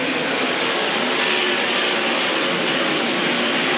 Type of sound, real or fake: real